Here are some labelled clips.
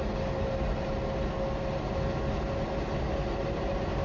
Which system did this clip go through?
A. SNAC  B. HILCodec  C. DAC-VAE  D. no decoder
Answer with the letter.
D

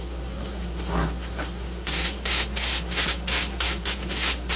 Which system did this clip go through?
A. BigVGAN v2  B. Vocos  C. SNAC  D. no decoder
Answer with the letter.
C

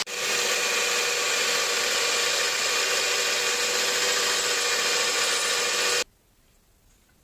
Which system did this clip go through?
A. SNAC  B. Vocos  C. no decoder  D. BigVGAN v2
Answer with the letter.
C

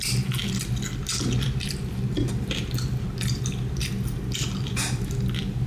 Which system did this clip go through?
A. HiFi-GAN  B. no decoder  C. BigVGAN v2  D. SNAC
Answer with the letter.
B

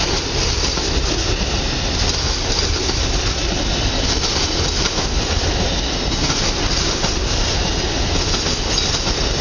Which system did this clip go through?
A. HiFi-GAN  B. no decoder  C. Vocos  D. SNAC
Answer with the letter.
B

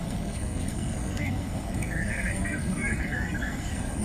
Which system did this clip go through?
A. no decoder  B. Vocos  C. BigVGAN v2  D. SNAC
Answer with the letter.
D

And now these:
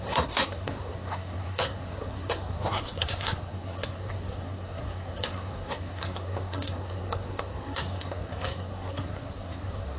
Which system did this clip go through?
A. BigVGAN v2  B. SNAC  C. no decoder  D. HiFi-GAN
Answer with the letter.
B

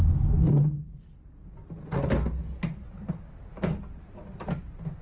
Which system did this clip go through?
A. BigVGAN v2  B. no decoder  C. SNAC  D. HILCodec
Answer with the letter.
B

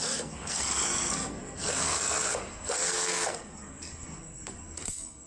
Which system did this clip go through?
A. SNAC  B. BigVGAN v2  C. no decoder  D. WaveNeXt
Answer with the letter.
A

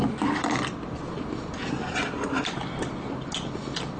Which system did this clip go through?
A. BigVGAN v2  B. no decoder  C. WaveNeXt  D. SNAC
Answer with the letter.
B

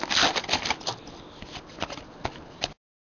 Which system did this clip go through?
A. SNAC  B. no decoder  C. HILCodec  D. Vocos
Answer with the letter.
B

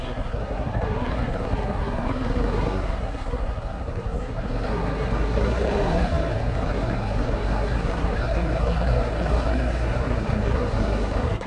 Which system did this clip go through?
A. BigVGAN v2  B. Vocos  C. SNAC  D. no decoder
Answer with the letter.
C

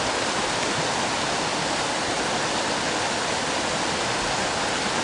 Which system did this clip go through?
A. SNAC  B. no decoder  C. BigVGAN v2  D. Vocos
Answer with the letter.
B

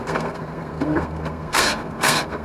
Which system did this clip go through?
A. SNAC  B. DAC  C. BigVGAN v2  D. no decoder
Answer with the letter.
A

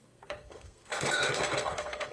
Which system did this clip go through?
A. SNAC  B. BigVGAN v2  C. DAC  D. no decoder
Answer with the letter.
A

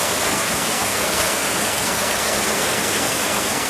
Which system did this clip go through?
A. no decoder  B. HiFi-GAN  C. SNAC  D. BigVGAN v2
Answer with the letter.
C